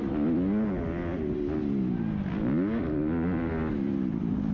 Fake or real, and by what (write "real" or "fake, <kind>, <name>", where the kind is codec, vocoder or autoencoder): real